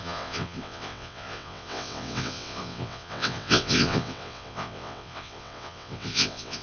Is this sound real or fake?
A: fake